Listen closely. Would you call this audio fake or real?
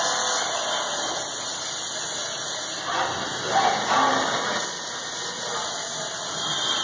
real